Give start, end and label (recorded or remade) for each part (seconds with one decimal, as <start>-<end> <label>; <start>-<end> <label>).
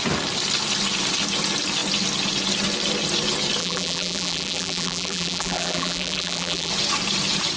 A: 0.0-3.6 recorded; 3.6-6.7 remade; 6.7-7.6 recorded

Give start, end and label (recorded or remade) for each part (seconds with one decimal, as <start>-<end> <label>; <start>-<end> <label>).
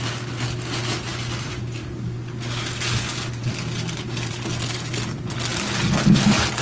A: 0.0-6.6 recorded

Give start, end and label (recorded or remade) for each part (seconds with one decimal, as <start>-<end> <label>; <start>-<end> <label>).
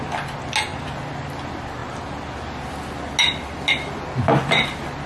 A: 0.0-0.7 recorded; 0.7-1.3 remade; 1.3-5.1 recorded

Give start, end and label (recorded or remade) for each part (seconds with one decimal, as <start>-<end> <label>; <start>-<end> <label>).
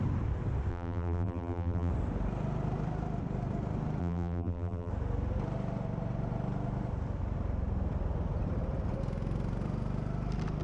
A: 0.0-0.7 recorded; 0.7-1.9 remade; 1.9-4.0 recorded; 4.0-4.9 remade; 4.9-10.6 recorded